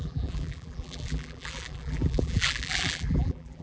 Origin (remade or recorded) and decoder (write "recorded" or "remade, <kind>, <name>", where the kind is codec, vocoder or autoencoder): remade, vocoder, BigVGAN v2